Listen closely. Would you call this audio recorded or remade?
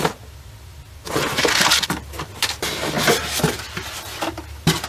remade